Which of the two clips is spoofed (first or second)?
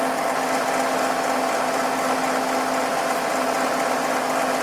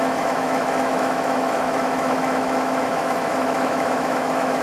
second